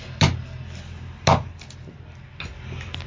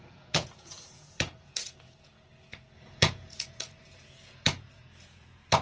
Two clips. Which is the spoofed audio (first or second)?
second